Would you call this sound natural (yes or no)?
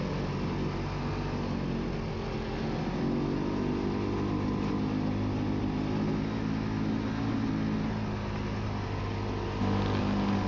yes